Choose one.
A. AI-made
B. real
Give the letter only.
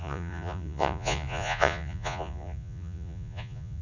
A